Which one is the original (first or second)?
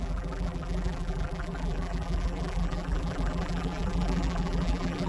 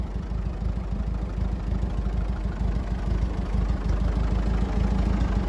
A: second